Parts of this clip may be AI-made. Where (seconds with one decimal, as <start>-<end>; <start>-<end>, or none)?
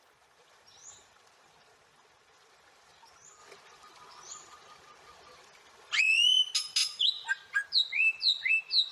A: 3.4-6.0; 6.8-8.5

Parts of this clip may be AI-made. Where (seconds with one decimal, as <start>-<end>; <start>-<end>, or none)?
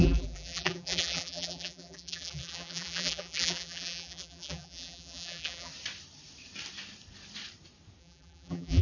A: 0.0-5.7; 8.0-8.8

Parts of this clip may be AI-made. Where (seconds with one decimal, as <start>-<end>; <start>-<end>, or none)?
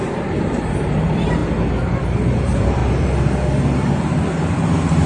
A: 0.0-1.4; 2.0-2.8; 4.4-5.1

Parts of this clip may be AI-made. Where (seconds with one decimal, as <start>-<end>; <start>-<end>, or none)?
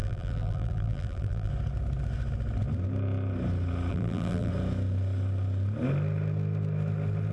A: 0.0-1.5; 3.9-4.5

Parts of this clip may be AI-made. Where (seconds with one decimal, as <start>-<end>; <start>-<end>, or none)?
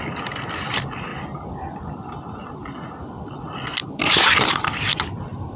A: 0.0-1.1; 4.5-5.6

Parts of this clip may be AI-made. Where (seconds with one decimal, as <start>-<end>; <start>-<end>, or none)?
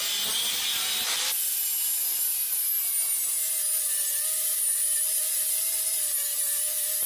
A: 0.8-1.7; 3.8-7.1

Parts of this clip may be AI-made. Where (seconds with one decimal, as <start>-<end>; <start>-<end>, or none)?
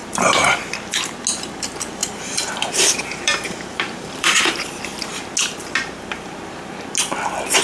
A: 0.0-0.6; 2.0-4.5